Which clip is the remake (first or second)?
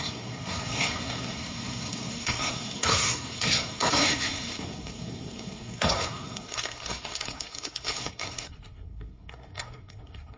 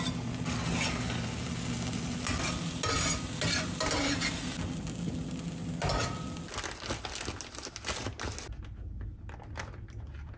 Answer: first